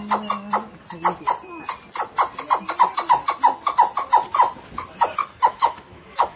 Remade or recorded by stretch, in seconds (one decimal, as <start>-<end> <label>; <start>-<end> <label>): 0.0-5.2 recorded; 5.2-6.4 remade